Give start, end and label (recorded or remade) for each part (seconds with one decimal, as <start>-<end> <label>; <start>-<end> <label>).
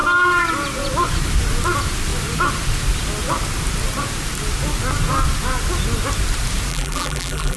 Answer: 0.0-6.7 recorded; 6.7-7.6 remade